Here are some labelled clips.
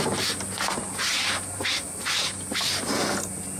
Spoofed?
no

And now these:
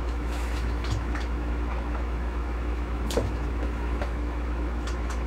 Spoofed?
yes